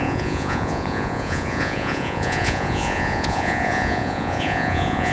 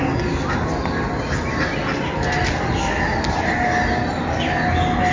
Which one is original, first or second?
second